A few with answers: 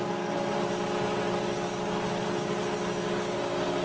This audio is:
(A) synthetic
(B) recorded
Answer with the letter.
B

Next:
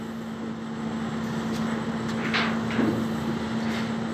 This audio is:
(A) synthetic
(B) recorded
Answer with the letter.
B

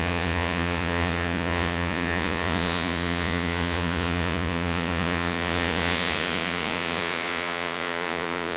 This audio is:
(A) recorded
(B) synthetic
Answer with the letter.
B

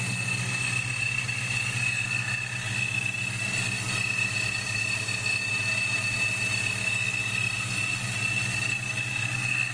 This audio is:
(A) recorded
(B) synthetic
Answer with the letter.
A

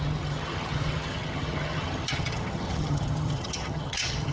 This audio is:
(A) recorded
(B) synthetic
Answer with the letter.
B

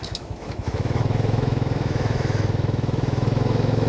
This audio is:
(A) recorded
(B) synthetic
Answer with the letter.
B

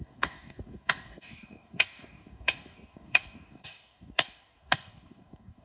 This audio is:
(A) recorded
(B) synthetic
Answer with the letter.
B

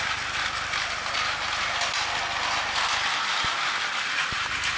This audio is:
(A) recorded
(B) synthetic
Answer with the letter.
A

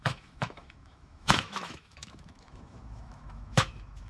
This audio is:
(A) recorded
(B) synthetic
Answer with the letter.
B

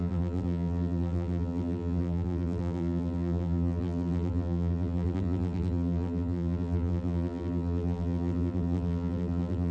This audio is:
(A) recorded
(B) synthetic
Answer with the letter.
B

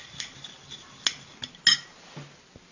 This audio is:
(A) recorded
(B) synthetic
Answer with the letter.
A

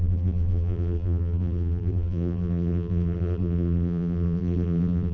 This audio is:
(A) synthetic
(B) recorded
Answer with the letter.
A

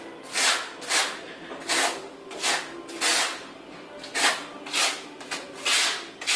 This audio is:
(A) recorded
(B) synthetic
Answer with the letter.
A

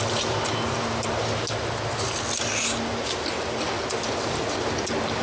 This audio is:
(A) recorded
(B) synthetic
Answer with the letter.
A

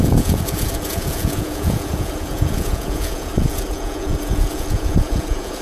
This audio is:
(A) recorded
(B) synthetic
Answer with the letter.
B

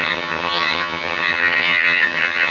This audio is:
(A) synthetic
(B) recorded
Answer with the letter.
A